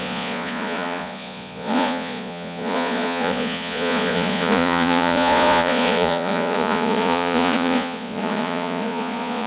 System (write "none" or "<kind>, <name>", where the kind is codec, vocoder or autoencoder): vocoder, Vocos